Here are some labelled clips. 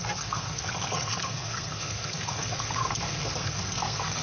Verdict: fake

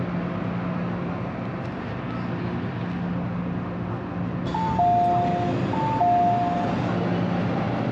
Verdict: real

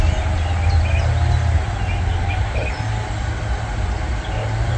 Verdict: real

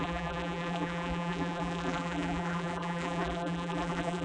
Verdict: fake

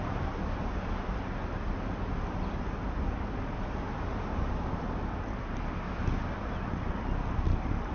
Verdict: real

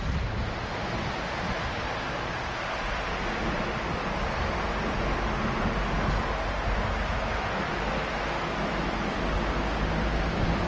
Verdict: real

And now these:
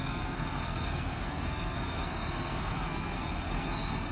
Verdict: fake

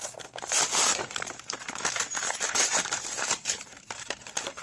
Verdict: fake